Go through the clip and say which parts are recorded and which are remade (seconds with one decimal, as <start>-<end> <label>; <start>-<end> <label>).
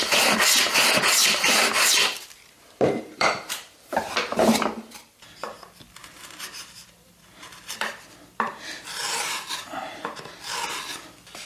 0.0-1.2 recorded; 1.2-4.7 remade; 4.7-6.0 recorded; 6.0-10.0 remade; 10.0-11.5 recorded